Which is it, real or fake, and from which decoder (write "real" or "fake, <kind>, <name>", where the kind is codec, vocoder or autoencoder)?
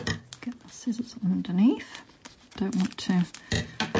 real